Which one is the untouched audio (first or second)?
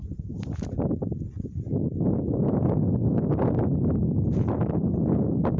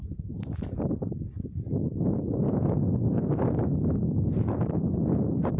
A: first